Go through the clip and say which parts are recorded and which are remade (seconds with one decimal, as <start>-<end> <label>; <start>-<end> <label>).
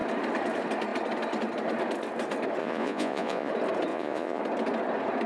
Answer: 0.0-2.6 recorded; 2.6-3.5 remade; 3.5-3.9 recorded; 3.9-4.4 remade; 4.4-5.3 recorded